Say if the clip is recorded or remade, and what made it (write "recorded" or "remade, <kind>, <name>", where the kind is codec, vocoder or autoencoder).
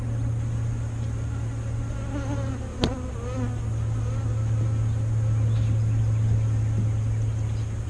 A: recorded